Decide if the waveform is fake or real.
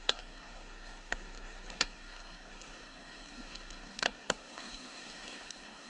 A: fake